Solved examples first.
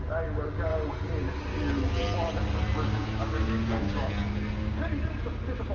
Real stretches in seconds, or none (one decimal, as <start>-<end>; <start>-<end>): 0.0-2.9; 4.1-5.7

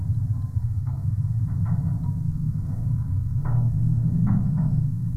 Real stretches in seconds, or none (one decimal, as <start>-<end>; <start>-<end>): 0.0-0.6; 1.4-2.3

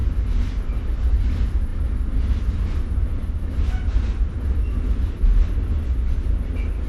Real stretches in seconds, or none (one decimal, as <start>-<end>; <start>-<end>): 0.0-6.9